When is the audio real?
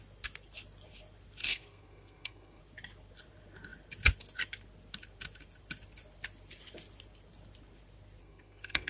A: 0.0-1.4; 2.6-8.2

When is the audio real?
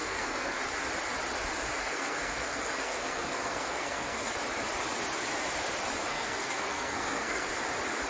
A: 0.6-1.8; 4.3-6.1; 7.5-8.1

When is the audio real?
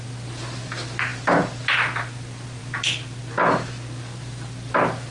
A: 0.0-5.1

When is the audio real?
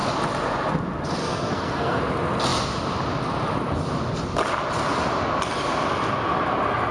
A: 0.0-1.2; 2.0-6.9